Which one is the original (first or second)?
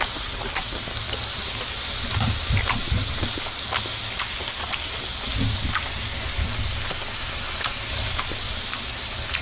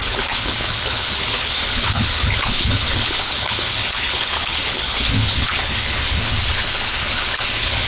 first